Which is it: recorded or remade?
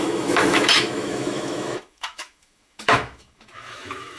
remade